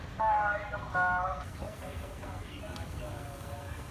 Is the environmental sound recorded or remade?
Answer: remade